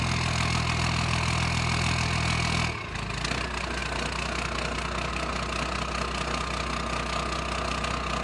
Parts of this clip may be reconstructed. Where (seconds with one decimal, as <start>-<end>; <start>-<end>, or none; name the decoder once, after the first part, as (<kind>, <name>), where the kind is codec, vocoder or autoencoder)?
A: none